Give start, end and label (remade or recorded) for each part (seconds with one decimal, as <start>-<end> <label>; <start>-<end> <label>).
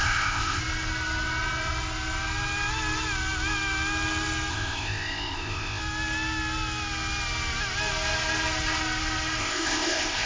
0.0-0.6 remade; 0.6-4.5 recorded; 4.5-5.8 remade; 5.8-9.4 recorded; 9.4-10.3 remade